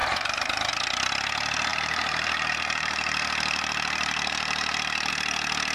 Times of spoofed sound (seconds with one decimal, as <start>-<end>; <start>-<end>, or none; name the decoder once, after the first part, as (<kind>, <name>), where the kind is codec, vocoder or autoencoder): 0.0-0.7 (vocoder, BigVGAN v2); 1.7-5.1